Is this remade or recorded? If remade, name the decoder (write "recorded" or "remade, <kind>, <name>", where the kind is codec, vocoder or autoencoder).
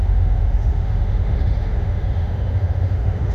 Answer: remade, autoencoder, DAC-VAE